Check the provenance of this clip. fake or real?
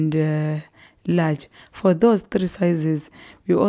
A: real